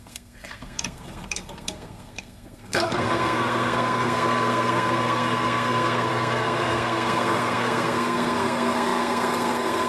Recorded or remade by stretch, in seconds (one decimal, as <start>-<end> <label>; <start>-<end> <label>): 0.0-9.9 remade